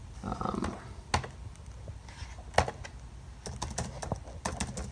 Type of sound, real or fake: real